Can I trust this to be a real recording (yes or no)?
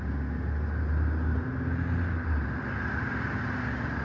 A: yes